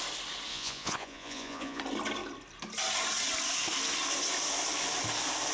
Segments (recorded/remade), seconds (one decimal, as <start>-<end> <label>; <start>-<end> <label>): 0.0-0.5 recorded; 0.5-1.8 remade; 1.8-5.5 recorded